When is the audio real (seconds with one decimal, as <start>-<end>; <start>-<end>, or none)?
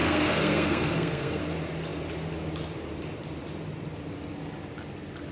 1.4-5.3